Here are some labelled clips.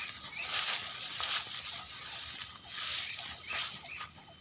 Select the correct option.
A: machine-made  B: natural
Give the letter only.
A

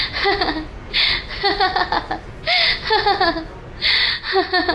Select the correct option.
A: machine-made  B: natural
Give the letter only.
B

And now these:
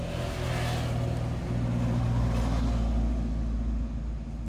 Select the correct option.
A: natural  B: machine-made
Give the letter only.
A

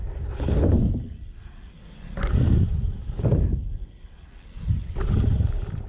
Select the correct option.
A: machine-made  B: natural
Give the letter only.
B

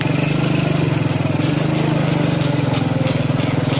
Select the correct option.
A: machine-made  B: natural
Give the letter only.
B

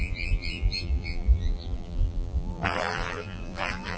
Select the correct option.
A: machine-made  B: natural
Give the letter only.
A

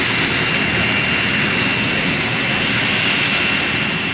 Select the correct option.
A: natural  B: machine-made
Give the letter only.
A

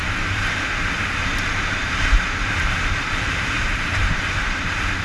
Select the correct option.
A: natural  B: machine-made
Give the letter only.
B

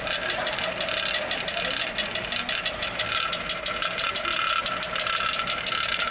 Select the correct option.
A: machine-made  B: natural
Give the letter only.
B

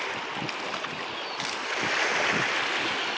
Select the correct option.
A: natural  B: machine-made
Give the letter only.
A